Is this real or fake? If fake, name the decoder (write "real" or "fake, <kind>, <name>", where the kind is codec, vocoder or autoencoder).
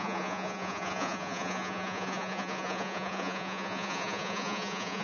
fake, vocoder, Vocos